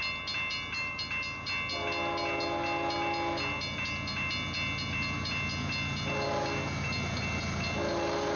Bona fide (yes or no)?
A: yes